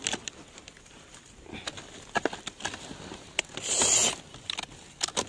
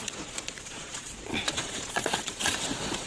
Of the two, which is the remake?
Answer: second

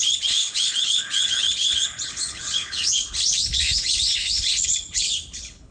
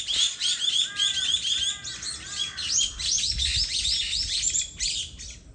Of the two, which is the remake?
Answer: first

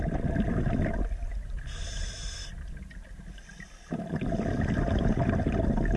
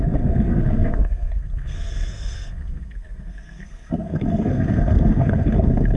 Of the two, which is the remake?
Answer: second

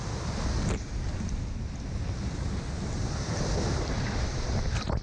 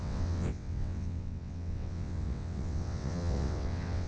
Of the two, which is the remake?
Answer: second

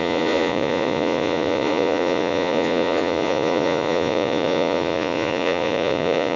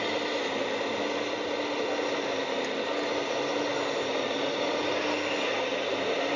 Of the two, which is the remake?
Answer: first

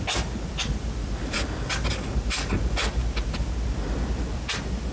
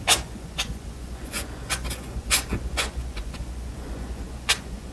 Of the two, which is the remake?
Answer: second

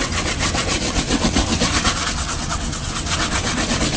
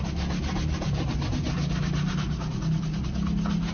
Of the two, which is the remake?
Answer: first